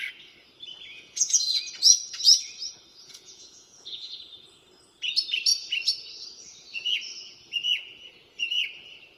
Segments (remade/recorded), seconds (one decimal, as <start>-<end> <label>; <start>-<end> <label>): 0.0-0.9 recorded; 0.9-1.6 remade; 1.6-2.9 recorded; 2.9-4.2 remade; 4.2-9.2 recorded